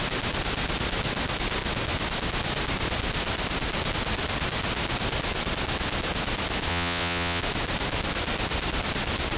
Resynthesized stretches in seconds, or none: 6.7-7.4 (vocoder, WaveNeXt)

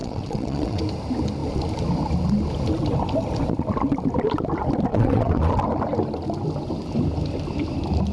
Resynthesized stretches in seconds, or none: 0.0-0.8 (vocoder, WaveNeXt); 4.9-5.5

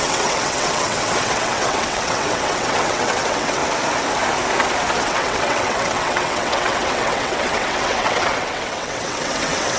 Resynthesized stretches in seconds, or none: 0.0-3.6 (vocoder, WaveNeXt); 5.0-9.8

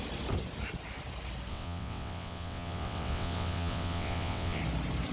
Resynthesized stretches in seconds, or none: 1.5-4.6 (vocoder, WaveNeXt)

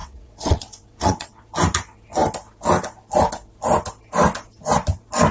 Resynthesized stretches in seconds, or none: 0.0-1.4 (vocoder, WaveNeXt)

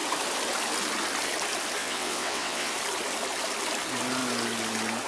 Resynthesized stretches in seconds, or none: 1.8-2.7 (vocoder, WaveNeXt)

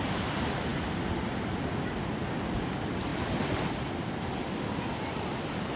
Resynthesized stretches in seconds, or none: none

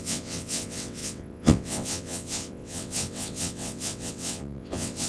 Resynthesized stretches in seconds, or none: 0.0-5.1 (vocoder, WaveNeXt)